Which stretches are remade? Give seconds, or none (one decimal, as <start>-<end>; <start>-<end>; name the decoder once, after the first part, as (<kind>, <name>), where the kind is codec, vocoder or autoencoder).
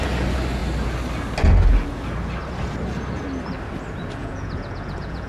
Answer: 4.2-5.3 (vocoder, Vocos)